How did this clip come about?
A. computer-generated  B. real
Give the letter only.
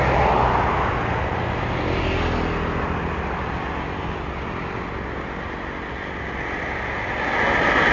B